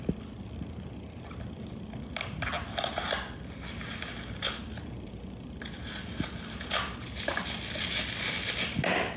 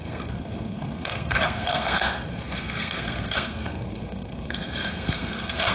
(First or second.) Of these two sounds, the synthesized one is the second